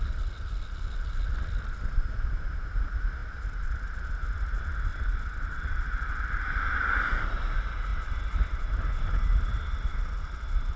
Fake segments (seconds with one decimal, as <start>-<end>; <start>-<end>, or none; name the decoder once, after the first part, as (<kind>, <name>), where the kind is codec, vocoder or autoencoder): 4.9-6.3 (vocoder, BigVGAN v2); 7.9-8.5